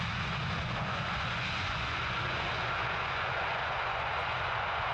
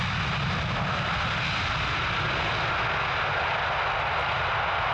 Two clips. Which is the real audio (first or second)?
second